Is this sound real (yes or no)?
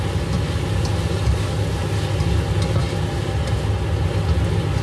yes